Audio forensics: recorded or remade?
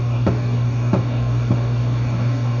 remade